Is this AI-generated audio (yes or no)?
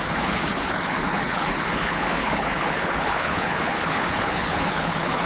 yes